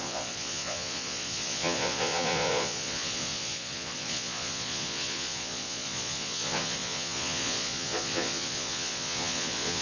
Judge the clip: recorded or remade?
remade